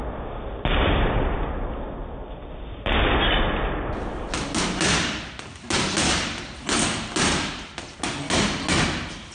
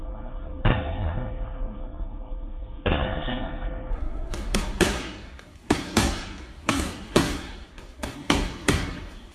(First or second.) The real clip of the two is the first